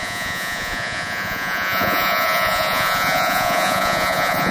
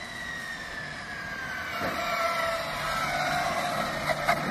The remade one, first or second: first